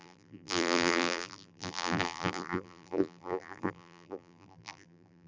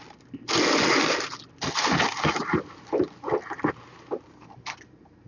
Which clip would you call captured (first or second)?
second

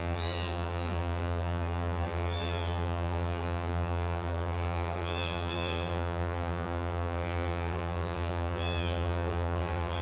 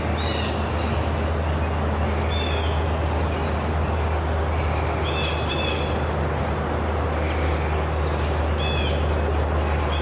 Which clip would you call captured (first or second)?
second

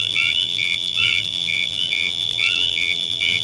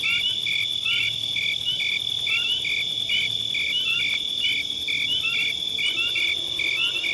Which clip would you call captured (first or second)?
second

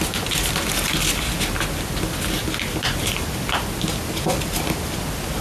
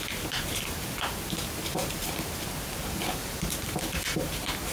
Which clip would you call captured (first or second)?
first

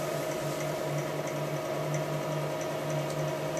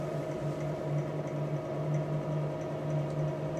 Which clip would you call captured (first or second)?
first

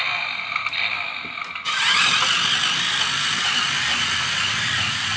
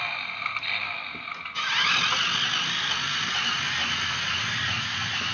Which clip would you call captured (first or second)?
second